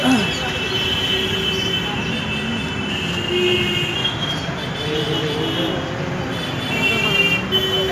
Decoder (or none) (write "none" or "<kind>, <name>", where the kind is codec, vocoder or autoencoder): none